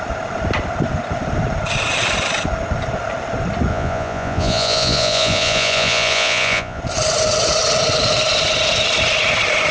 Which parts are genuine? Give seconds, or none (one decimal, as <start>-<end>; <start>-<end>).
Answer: 0.0-3.7; 6.8-9.7